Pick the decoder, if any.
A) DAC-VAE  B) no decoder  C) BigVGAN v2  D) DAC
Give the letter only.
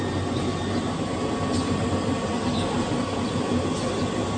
B